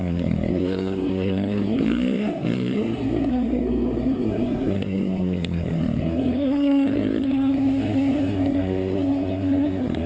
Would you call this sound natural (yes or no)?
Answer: no